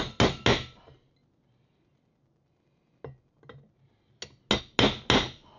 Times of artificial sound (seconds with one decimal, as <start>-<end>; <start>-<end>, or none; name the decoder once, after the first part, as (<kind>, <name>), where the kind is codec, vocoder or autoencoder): none